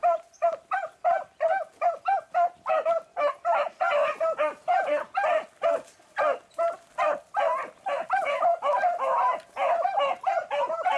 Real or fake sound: real